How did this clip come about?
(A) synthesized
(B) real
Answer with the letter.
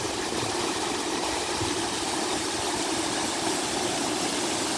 B